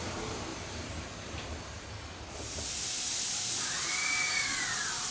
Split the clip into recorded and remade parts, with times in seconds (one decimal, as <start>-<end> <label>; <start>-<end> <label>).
0.0-5.1 recorded